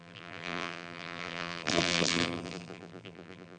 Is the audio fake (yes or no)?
yes